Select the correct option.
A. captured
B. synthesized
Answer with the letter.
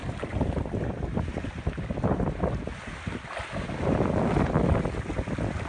A